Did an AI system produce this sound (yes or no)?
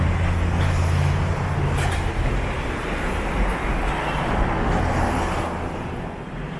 no